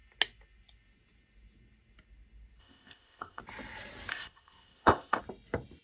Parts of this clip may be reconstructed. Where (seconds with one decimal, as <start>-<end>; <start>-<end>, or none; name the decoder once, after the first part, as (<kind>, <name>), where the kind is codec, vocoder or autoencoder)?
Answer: 2.6-3.4 (codec, ZipCodec); 4.1-5.2